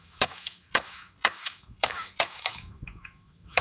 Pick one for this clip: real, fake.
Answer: fake